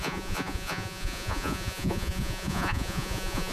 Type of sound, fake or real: fake